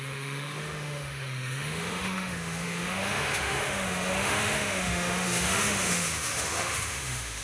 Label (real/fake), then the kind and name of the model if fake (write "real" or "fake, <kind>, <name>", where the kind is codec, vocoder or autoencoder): fake, autoencoder, DAC-VAE